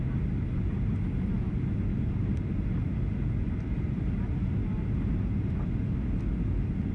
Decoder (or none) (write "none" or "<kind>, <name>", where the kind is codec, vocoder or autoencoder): none